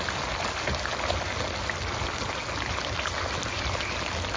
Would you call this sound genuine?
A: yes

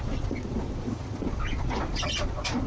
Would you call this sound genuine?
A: no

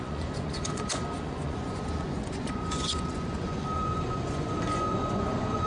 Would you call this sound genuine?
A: no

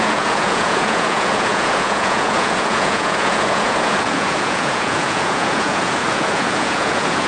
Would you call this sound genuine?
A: no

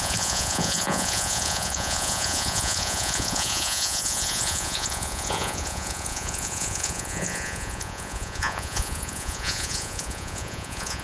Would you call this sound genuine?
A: no